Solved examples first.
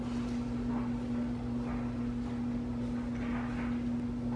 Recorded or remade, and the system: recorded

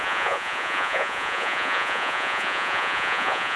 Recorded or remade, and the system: remade, vocoder, Vocos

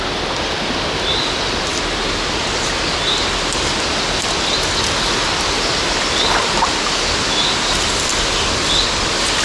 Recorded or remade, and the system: recorded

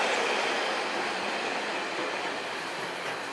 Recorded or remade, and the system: recorded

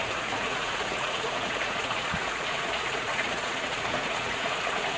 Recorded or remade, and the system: remade, vocoder, Vocos